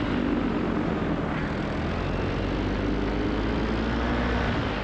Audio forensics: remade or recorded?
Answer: recorded